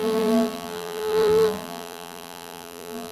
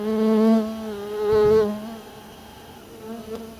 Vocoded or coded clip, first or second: first